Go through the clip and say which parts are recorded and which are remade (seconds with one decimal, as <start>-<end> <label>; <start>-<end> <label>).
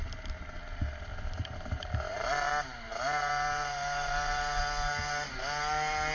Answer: 0.0-1.1 recorded; 1.1-4.6 remade; 4.6-6.1 recorded